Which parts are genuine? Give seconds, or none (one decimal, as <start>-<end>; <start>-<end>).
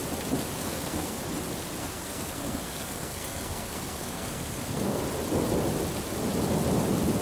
0.0-0.6; 1.2-1.8; 5.0-7.2